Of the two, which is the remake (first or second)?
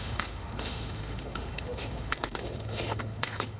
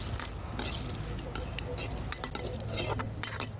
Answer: first